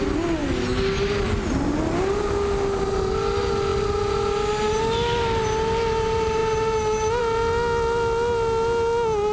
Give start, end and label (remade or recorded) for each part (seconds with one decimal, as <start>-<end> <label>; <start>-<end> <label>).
0.0-9.3 recorded